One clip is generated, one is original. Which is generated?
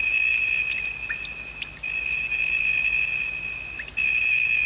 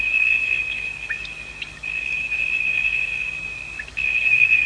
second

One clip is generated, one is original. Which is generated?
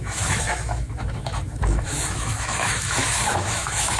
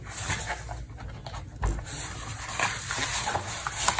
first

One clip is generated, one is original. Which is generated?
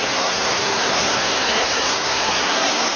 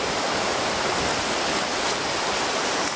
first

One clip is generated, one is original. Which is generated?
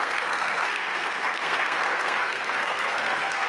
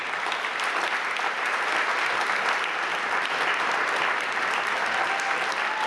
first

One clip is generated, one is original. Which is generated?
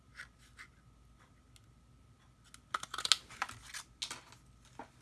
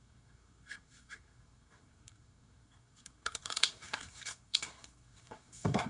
second